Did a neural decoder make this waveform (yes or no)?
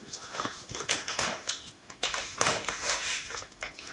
yes